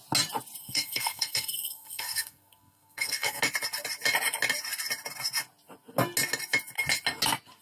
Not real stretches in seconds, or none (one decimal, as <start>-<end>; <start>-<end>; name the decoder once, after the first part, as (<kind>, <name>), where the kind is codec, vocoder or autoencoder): 0.6-3.4 (codec, SNAC)